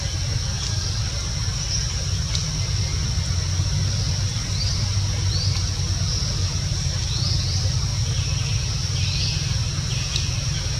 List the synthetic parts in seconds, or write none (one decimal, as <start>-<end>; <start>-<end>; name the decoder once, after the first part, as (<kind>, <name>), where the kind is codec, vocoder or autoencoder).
none